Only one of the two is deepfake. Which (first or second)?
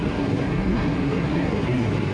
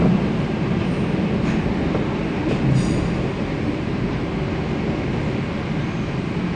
first